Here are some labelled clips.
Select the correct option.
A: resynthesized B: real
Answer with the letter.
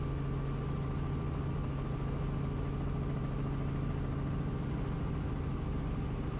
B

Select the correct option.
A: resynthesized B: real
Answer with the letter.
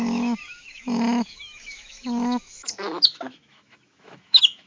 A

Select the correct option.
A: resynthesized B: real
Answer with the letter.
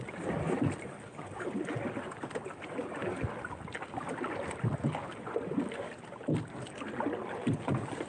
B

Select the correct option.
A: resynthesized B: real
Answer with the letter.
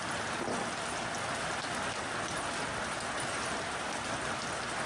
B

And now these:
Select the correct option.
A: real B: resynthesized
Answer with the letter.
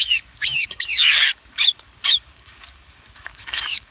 B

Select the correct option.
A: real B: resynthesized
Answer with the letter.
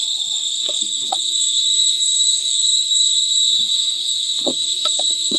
B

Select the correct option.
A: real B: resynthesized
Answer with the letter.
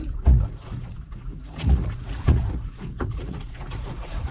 B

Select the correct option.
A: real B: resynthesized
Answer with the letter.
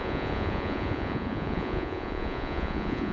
B